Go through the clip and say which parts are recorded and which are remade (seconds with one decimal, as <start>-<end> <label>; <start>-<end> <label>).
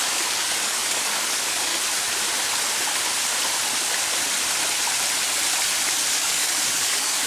0.0-1.7 remade; 1.7-6.1 recorded; 6.1-7.3 remade